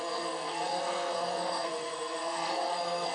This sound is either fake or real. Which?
fake